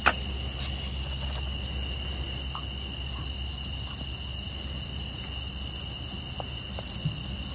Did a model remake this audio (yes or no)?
no